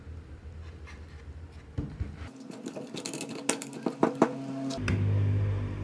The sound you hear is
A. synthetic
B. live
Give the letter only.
B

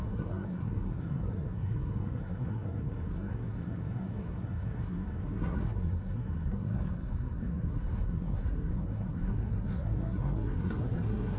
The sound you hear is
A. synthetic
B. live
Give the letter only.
A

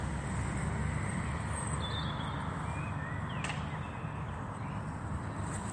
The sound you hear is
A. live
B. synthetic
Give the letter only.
A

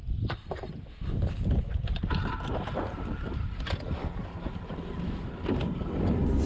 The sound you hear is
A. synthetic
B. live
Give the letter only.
B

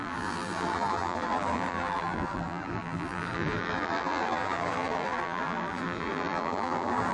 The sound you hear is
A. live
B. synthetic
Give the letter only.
B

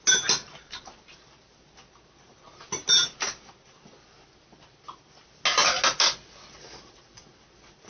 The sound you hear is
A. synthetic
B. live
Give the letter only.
B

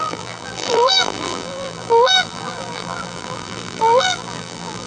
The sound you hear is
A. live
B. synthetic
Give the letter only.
B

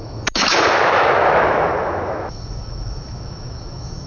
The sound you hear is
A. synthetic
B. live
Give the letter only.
A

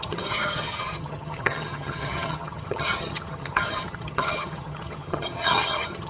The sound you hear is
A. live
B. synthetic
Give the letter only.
B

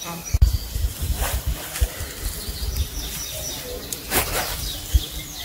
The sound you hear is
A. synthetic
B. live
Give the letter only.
A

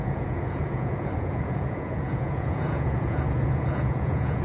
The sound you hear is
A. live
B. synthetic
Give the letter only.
B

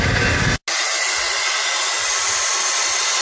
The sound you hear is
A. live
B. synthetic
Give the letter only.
A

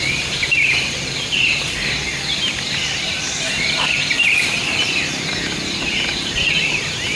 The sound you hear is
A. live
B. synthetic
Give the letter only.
A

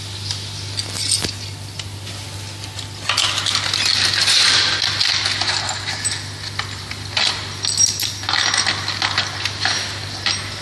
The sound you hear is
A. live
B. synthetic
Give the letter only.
A